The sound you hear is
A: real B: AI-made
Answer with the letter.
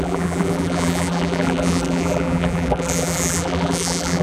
B